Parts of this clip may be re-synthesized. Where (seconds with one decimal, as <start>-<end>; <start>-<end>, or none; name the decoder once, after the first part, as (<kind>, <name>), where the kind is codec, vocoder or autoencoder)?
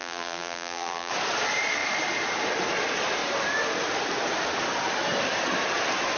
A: 0.0-1.1 (vocoder, BigVGAN v2)